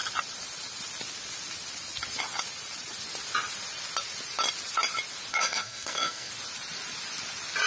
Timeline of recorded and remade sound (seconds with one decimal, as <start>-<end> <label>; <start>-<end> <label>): 0.0-5.3 recorded; 5.3-6.3 remade; 6.3-7.7 recorded